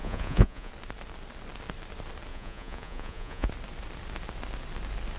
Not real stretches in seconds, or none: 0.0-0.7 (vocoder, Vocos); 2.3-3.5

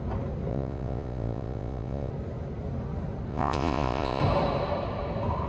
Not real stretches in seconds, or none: 0.5-2.1 (vocoder, Vocos); 3.3-4.2